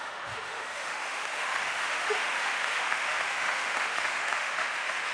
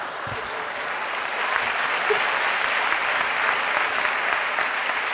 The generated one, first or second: first